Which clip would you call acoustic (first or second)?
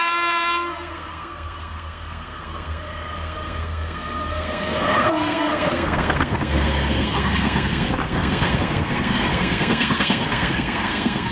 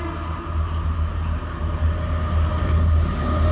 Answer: second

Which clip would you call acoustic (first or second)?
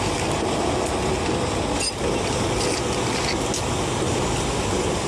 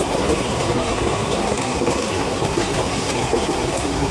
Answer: first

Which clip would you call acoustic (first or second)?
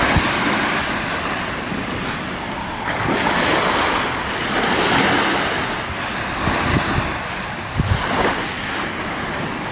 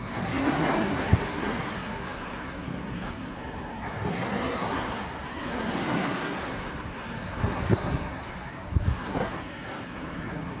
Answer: first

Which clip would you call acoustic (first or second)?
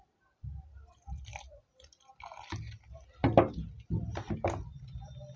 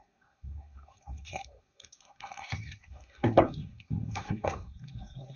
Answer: first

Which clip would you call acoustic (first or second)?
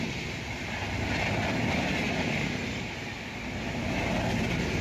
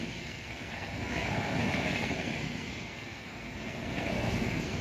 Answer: first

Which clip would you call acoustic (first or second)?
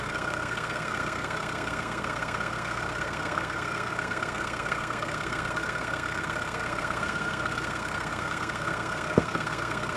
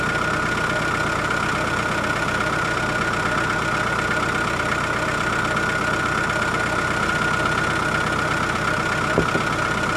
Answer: second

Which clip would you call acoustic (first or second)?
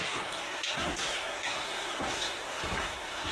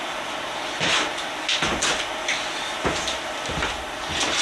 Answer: second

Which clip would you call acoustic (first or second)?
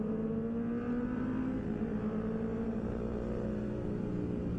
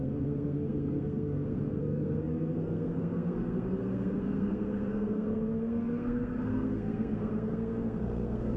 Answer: first